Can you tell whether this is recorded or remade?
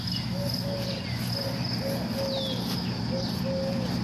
recorded